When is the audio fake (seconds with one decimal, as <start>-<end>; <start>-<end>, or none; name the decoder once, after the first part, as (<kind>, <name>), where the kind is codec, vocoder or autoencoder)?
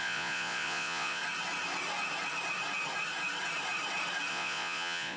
0.0-1.2 (vocoder, Vocos); 4.3-5.2